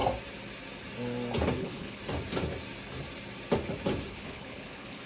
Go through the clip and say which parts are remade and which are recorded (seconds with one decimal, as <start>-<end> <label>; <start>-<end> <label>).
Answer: 0.0-1.6 recorded; 1.6-2.0 remade; 2.0-4.1 recorded; 4.1-5.1 remade